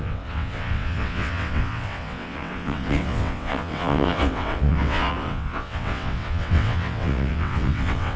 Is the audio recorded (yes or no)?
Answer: no